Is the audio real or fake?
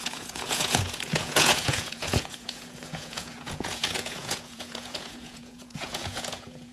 fake